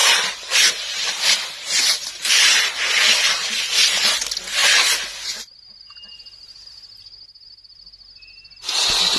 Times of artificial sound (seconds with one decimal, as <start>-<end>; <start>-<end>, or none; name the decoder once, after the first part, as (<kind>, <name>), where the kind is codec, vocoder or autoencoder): 0.0-0.7 (vocoder, BigVGAN v2)